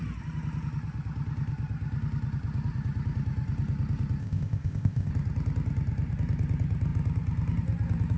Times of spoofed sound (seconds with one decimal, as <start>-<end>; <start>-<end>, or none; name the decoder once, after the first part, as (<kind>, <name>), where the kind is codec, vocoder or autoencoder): 4.2-5.1 (codec, ZipCodec)